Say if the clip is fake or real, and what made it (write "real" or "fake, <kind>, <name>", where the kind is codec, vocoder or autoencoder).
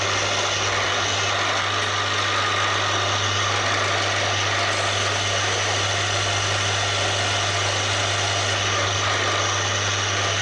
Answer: real